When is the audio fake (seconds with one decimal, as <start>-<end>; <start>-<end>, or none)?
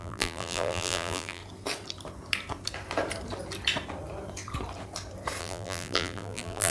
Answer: 0.0-1.4; 5.4-6.7